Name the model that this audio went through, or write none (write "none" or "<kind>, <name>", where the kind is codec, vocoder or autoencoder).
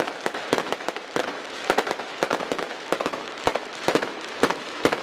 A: autoencoder, DAC-VAE